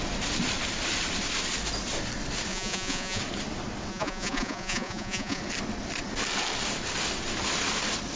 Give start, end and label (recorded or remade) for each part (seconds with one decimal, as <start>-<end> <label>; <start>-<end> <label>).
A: 0.0-2.5 recorded; 2.5-3.2 remade; 3.2-3.9 recorded; 3.9-5.4 remade; 5.4-8.2 recorded